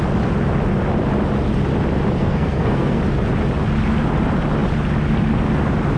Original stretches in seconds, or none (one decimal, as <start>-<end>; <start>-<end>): 0.0-2.2; 3.0-6.0